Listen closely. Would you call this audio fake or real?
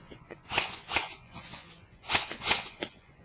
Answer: fake